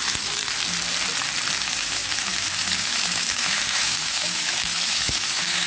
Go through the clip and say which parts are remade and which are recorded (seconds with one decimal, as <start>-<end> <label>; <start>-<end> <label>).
0.0-0.4 remade; 0.4-1.6 recorded; 1.6-5.7 remade